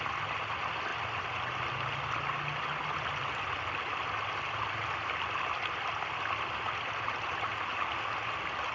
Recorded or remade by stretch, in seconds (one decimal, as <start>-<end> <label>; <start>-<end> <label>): 0.0-8.7 recorded